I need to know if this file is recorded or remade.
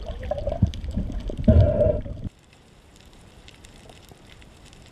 remade